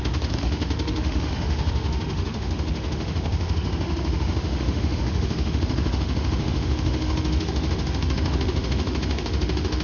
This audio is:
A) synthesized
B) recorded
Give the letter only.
A